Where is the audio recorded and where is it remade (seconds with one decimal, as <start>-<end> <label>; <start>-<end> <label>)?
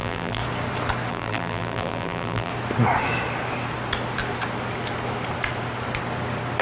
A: 0.0-0.4 remade; 0.4-1.1 recorded; 1.1-2.5 remade; 2.5-6.6 recorded